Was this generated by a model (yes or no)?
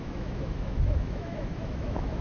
yes